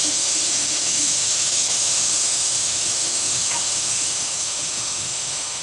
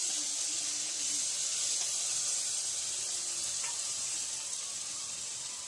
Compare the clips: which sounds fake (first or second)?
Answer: first